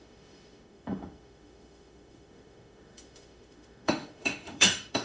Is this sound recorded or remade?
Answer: remade